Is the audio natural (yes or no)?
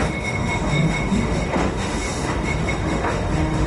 no